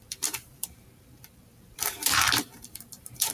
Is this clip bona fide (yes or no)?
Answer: no